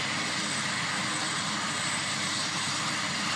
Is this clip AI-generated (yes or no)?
no